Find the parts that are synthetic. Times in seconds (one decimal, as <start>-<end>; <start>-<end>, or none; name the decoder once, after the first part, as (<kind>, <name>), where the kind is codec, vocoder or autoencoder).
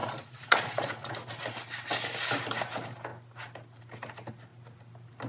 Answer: 0.0-1.1 (vocoder, Vocos)